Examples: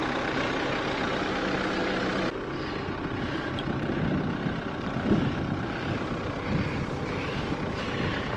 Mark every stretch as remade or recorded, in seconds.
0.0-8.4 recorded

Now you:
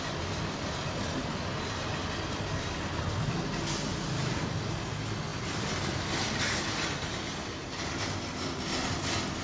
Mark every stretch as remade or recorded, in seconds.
0.0-9.4 recorded

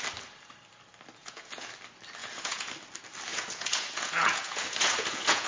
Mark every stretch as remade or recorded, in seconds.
0.0-1.2 recorded; 1.2-1.7 remade; 1.7-2.2 recorded; 2.2-2.7 remade; 2.7-3.3 recorded; 3.3-5.5 remade

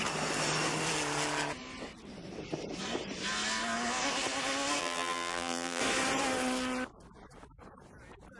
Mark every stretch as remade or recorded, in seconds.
0.0-4.8 recorded; 4.8-5.8 remade; 5.8-8.4 recorded